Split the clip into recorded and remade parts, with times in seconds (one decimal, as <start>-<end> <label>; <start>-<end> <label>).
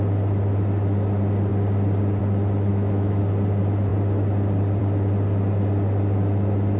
0.0-2.7 recorded; 2.7-3.2 remade; 3.2-6.8 recorded